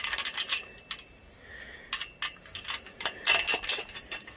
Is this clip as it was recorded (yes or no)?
yes